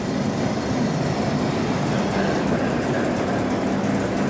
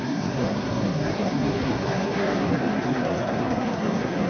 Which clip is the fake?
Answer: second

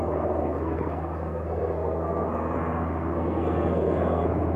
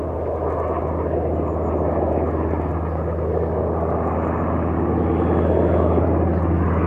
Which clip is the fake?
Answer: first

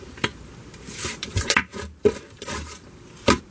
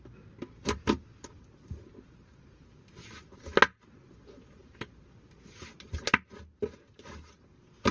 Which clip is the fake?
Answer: first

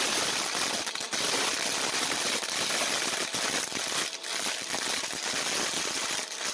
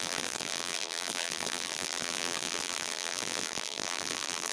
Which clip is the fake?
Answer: second